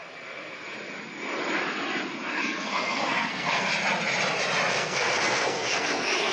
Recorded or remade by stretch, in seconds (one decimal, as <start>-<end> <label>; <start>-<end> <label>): 0.0-2.3 recorded; 2.3-3.7 remade; 3.7-4.7 recorded; 4.7-6.3 remade